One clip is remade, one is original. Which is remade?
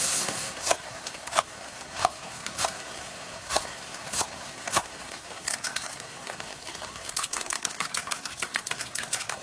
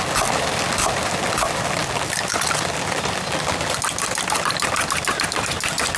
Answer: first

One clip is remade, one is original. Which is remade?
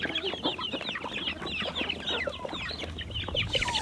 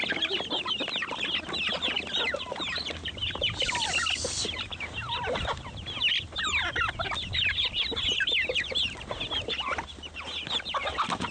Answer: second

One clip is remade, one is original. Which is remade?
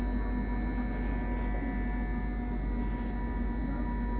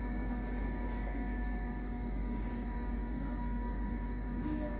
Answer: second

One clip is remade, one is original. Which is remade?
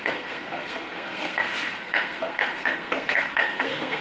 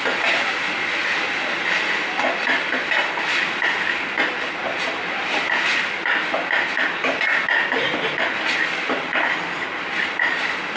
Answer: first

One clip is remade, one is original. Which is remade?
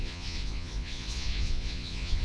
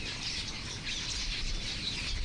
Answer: first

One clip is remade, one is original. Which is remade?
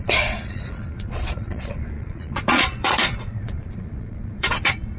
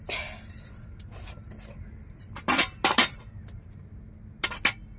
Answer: first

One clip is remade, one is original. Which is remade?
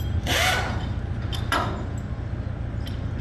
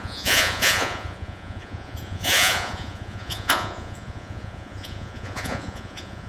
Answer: second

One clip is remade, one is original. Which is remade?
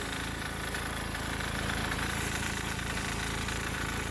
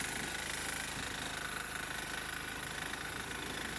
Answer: first